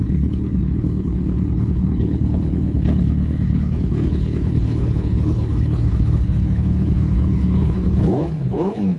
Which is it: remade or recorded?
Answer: remade